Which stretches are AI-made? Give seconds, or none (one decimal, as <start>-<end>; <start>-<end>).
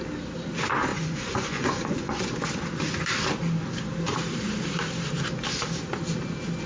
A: 0.9-2.3